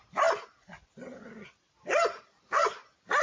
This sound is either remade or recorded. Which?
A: recorded